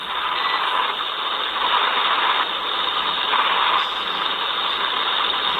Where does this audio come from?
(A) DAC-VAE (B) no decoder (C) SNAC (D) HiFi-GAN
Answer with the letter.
B